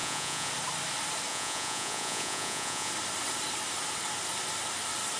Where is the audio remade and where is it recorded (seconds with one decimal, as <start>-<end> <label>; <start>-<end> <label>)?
0.0-0.5 remade; 0.5-1.3 recorded; 1.3-2.9 remade; 2.9-5.2 recorded